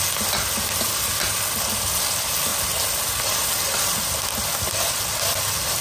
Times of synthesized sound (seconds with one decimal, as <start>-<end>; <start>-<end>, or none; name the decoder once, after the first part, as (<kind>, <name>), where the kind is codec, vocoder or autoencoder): none